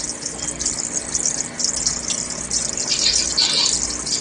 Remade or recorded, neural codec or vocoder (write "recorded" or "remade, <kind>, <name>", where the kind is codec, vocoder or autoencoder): recorded